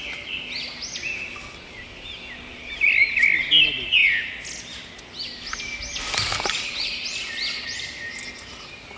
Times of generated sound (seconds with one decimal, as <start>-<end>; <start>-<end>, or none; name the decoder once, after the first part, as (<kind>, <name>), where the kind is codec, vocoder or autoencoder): none